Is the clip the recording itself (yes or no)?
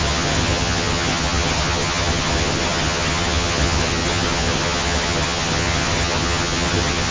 no